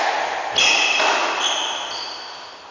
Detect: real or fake real